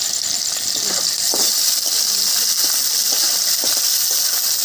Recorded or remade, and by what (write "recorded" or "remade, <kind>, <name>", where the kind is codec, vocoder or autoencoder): recorded